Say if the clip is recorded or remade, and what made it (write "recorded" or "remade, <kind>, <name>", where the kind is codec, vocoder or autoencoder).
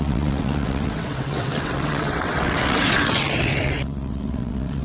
remade, vocoder, WaveNeXt